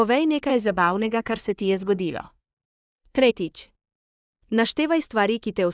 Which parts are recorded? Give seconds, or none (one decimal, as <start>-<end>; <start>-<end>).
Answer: 0.0-0.5; 3.3-5.7